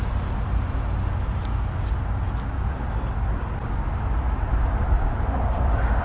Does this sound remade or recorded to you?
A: recorded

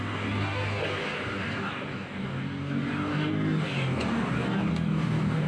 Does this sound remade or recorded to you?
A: remade